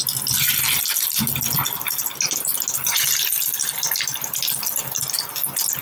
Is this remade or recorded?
recorded